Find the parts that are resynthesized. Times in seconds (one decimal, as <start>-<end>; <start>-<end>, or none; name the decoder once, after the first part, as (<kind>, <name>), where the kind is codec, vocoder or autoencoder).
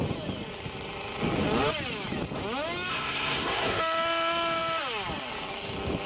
2.9-3.8 (codec, SNAC)